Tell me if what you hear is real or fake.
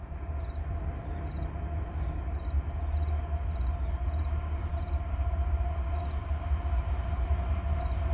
real